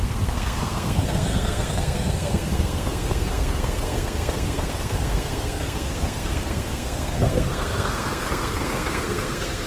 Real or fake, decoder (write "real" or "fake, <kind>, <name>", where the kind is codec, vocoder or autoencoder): fake, codec, SNAC